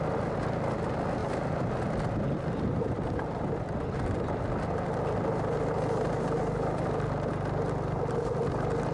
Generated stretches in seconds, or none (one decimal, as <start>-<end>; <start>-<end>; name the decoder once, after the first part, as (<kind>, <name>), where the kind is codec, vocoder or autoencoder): none